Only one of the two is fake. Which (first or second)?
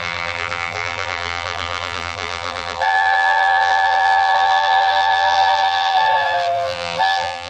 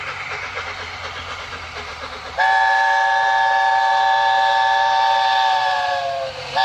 first